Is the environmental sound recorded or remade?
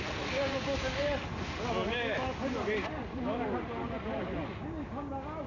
recorded